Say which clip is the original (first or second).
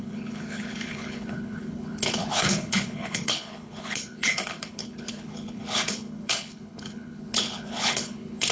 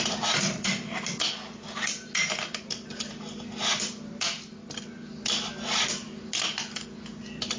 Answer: second